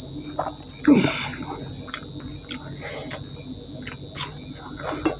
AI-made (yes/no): no